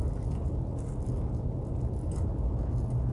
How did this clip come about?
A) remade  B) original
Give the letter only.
B